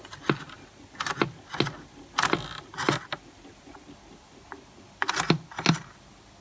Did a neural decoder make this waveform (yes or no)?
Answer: no